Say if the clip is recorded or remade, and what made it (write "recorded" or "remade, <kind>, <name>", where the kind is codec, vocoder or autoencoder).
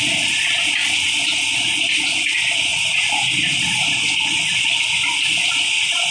recorded